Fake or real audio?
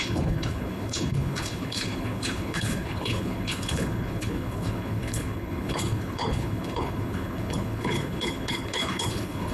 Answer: fake